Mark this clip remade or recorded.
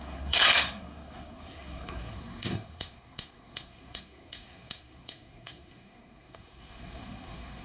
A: remade